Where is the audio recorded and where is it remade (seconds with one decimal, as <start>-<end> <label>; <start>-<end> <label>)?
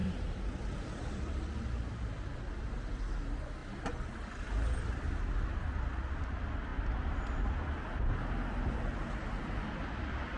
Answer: 0.0-10.4 recorded